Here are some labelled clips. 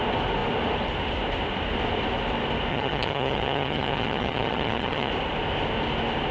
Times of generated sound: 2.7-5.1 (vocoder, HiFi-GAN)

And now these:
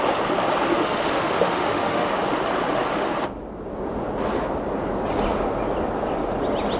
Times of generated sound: 0.7-2.1 (autoencoder, DAC-VAE)

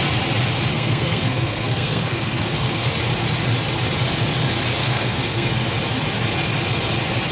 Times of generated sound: 0.7-2.9 (codec, SNAC); 4.8-5.5

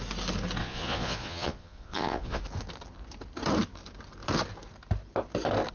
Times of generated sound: 0.6-2.4 (vocoder, Vocos)

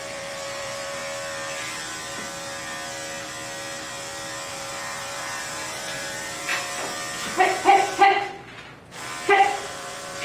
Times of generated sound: 0.0-1.0 (vocoder, BigVGAN v2); 4.5-6.5; 9.3-10.2

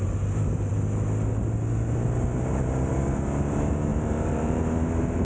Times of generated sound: 3.9-4.6 (vocoder, BigVGAN v2)

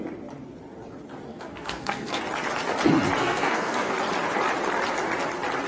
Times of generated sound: 1.3-2.2 (codec, SNAC); 3.2-3.9